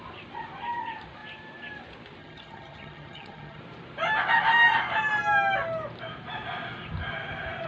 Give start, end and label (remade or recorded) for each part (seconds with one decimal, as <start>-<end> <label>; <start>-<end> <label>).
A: 0.0-2.2 recorded; 2.2-3.6 remade; 3.6-7.7 recorded